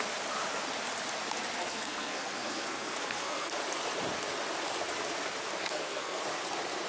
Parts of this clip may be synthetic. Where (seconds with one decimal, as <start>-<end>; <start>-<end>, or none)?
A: 1.6-3.5; 5.6-6.2